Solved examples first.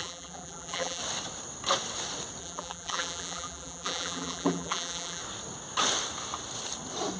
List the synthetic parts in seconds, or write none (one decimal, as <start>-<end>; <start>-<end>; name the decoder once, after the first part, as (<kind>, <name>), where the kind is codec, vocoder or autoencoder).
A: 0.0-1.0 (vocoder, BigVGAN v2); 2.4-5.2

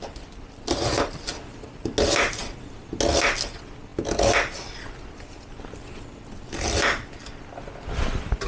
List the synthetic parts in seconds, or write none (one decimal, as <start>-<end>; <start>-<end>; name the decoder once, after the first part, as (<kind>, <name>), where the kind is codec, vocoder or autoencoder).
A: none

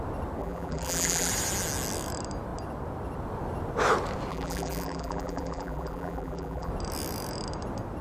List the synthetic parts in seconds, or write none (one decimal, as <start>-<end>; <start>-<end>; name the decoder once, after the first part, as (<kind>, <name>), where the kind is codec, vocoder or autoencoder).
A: 0.4-1.3 (vocoder, BigVGAN v2); 4.3-6.7

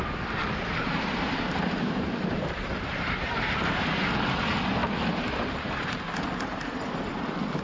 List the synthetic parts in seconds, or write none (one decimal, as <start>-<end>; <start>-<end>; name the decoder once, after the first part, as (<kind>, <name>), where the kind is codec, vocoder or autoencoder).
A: 0.4-3.3 (vocoder, BigVGAN v2); 4.8-6.7

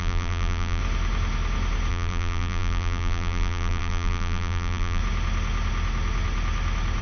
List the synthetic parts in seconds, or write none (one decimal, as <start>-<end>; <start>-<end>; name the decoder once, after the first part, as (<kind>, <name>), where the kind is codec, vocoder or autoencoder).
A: 0.0-0.8 (vocoder, BigVGAN v2); 1.9-5.0